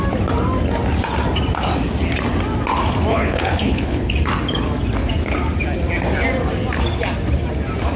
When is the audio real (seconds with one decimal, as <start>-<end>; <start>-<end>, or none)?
0.0-3.1; 4.1-8.0